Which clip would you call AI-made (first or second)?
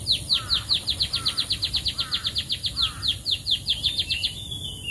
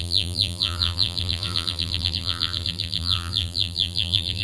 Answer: second